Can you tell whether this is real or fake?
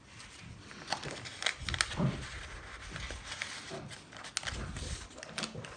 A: real